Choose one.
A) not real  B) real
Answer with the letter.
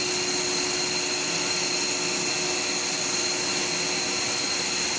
B